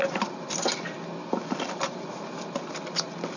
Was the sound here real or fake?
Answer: real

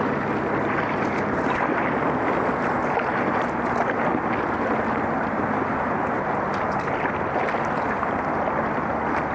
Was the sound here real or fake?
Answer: real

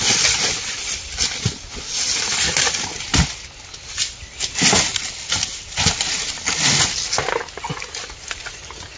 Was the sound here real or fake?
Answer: real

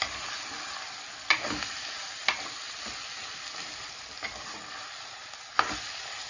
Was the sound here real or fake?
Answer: real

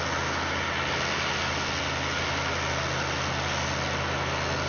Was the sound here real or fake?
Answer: real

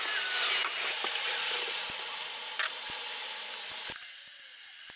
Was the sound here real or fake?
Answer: real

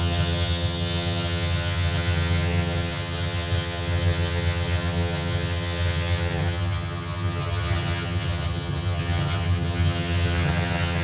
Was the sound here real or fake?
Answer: fake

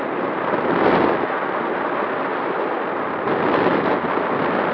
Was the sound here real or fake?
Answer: real